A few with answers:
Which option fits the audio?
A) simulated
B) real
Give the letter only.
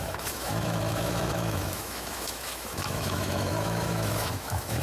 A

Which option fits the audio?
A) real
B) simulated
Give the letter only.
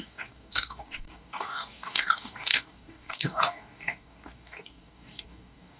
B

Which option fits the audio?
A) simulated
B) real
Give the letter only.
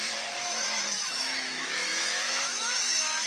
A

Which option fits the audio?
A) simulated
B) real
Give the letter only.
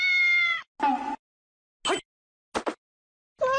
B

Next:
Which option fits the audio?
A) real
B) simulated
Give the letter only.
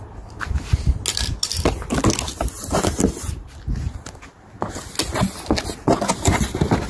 A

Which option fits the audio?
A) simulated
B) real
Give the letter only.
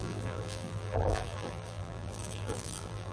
A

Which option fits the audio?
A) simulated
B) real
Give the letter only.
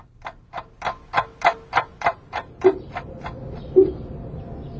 B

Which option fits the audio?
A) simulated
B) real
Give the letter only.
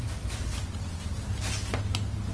B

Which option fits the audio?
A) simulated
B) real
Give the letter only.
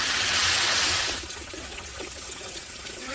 A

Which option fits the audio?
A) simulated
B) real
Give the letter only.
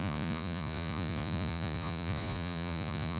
A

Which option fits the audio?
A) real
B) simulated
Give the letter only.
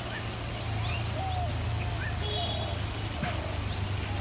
A